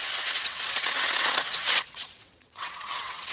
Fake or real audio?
fake